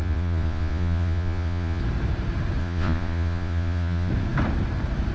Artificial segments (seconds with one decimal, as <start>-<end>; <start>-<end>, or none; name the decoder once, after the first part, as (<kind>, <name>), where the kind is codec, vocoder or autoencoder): 0.0-1.8 (vocoder, Vocos); 2.6-4.1